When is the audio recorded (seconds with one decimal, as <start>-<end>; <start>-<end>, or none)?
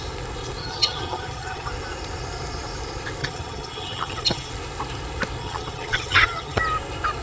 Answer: 0.0-0.6; 1.7-3.2; 4.5-5.4; 6.6-7.2